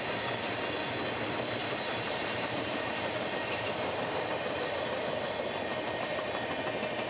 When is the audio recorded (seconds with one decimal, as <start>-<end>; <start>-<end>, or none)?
0.0-1.6; 4.9-7.1